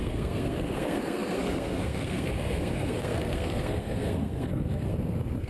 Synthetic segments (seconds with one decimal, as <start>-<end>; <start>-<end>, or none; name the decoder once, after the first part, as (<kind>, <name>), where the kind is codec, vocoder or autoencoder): 0.0-5.5 (codec, SNAC)

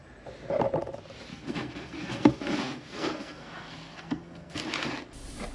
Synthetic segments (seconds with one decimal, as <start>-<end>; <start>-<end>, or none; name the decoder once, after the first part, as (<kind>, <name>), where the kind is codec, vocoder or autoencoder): 1.3-4.6 (codec, SNAC)

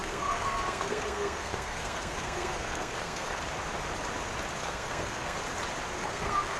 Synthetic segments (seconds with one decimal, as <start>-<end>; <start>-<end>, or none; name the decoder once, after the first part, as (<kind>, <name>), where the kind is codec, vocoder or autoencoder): 0.0-3.4 (codec, SNAC); 4.6-5.4; 6.0-6.6

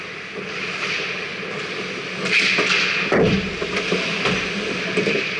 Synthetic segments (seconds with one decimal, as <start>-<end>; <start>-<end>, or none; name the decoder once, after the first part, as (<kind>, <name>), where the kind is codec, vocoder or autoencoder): none

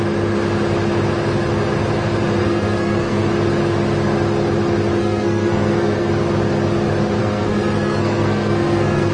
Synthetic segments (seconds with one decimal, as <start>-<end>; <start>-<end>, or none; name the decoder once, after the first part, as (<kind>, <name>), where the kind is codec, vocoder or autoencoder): 2.4-3.3 (codec, SNAC); 5.0-6.1; 7.2-9.1

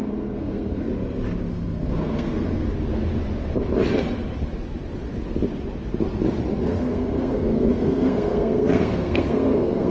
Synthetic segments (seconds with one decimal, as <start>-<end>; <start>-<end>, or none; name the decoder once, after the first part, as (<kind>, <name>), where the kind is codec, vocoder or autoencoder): 0.0-0.9 (codec, SNAC); 1.5-2.7; 6.6-9.9

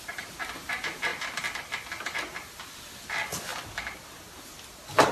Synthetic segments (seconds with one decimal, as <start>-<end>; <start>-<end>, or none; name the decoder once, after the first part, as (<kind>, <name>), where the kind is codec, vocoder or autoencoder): none